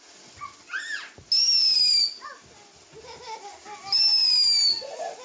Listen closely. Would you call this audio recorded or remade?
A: recorded